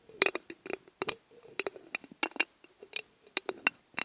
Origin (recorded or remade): recorded